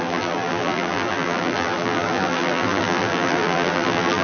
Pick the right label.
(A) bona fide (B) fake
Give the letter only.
B